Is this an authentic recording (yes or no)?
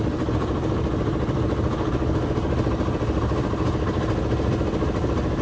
yes